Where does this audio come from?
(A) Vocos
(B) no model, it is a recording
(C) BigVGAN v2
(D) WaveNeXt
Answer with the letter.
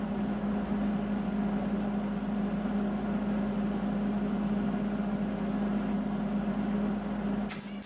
B